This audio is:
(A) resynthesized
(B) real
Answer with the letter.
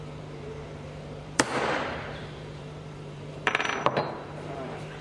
A